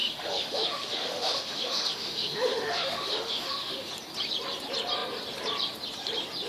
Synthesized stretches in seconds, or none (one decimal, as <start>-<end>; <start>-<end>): 0.0-3.9